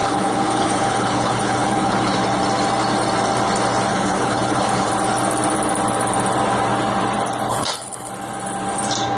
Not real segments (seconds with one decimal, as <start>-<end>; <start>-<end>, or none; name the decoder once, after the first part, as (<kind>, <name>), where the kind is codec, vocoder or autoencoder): 0.0-2.2 (codec, HILCodec); 3.9-4.9; 7.5-8.1

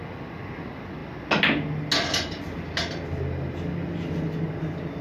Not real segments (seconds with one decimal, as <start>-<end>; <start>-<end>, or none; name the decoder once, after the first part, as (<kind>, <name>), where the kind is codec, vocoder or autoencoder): none

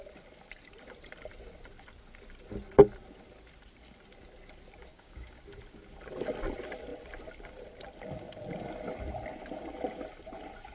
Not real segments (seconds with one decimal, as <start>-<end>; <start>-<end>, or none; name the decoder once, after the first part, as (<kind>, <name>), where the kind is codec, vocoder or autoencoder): 4.9-5.4 (codec, DAC)

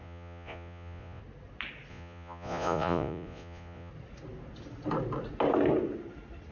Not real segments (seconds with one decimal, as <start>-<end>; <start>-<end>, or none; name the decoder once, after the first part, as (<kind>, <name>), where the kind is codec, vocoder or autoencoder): 0.0-1.2 (vocoder, Vocos); 1.9-3.9